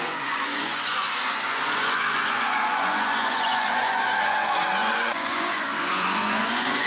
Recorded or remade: remade